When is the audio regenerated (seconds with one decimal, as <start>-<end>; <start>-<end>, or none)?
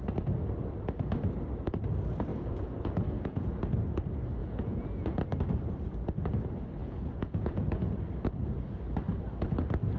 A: 2.3-3.6; 4.4-5.2; 6.8-7.9